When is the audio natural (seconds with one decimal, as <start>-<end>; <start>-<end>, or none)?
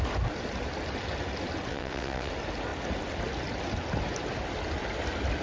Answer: 0.0-1.7; 2.3-5.4